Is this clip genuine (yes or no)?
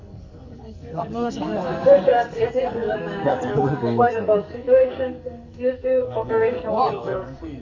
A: no